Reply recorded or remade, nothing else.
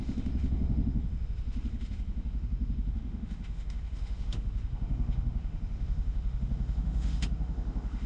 remade